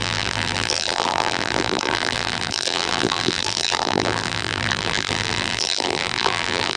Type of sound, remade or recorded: remade